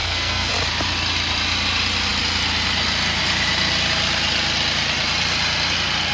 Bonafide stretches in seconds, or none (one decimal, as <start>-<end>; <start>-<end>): 0.5-6.1

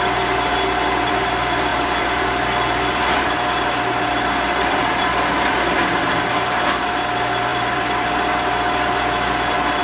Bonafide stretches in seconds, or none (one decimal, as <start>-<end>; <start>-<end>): 0.0-1.7; 6.9-7.5; 8.1-9.8

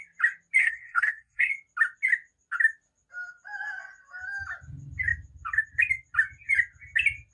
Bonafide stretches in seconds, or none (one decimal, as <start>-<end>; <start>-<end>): 0.0-0.6; 1.5-7.3

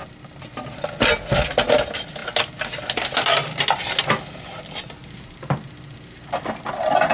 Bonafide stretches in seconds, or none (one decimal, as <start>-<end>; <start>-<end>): 0.0-7.1

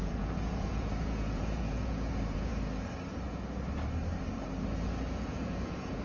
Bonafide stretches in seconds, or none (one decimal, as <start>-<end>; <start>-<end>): 2.5-5.1